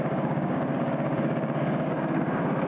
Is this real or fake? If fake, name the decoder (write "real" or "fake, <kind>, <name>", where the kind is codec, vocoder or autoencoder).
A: fake, codec, DAC